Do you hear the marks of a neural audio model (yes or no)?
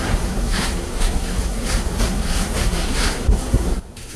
yes